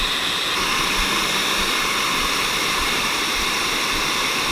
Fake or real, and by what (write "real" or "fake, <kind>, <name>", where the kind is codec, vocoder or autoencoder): real